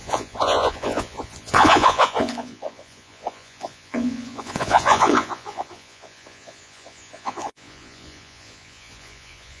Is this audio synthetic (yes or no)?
yes